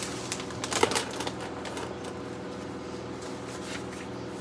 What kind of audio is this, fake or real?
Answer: real